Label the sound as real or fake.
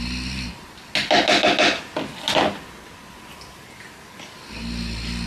real